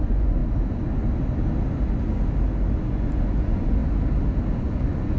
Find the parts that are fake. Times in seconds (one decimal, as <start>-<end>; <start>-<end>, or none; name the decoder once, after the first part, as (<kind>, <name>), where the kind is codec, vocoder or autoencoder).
0.0-0.4 (vocoder, Vocos); 2.9-3.8; 4.6-5.2